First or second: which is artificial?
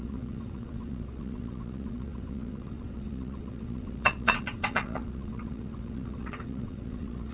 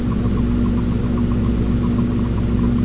first